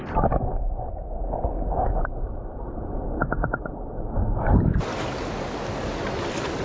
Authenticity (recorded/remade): recorded